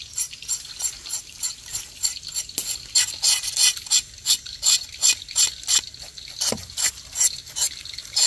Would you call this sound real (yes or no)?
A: yes